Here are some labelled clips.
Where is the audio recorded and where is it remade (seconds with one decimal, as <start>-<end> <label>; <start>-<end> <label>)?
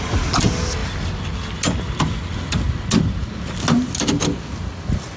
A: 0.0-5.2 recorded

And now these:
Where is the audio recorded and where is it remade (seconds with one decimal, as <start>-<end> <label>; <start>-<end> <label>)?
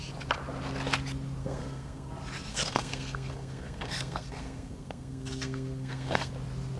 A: 0.0-1.4 recorded; 1.4-2.1 remade; 2.1-2.5 recorded; 2.5-6.3 remade; 6.3-6.8 recorded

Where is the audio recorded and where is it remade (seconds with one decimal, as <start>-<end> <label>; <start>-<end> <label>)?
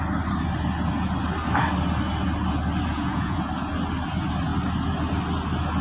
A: 0.0-2.9 recorded; 2.9-3.5 remade; 3.5-5.8 recorded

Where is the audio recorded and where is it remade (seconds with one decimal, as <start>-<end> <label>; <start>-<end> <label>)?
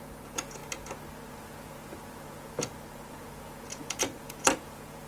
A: 0.0-0.6 remade; 0.6-1.3 recorded; 1.3-5.1 remade